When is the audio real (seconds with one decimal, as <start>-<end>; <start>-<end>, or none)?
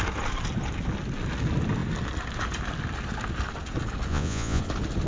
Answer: 0.0-4.1; 4.6-5.1